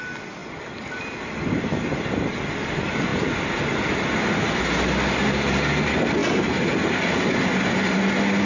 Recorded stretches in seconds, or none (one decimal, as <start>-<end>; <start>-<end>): 0.0-3.1; 4.6-6.2; 6.7-8.4